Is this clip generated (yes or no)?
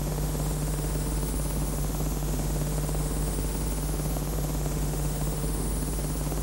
yes